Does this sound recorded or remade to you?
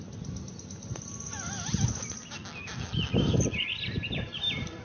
recorded